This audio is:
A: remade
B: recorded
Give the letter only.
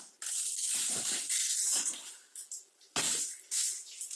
B